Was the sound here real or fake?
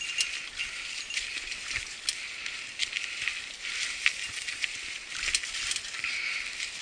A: real